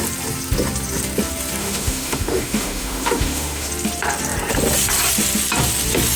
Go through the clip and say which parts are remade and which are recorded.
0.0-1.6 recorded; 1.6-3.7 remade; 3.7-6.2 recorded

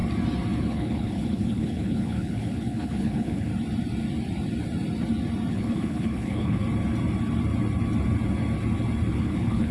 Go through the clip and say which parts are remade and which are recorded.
0.0-0.6 recorded; 0.6-3.5 remade; 3.5-5.5 recorded; 5.5-6.6 remade; 6.6-9.1 recorded; 9.1-9.7 remade

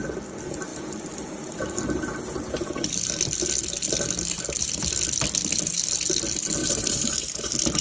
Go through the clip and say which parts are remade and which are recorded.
0.0-6.6 recorded; 6.6-7.8 remade

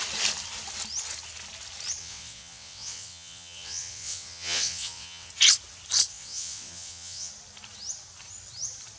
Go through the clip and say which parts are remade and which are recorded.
0.0-2.0 recorded; 2.0-5.3 remade; 5.3-6.1 recorded; 6.1-7.3 remade; 7.3-9.0 recorded

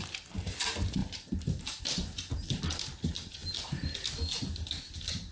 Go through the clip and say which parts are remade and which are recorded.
0.0-5.3 recorded

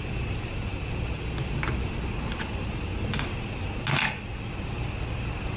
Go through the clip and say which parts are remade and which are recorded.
0.0-5.6 recorded

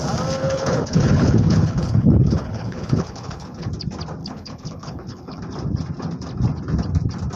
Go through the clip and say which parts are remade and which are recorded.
0.0-0.4 recorded; 0.4-3.7 remade; 3.7-4.2 recorded; 4.2-5.4 remade; 5.4-7.4 recorded